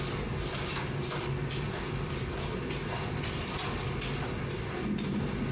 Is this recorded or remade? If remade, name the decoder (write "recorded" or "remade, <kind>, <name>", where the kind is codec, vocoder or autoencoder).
recorded